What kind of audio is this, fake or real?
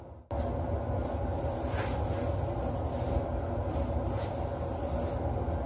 real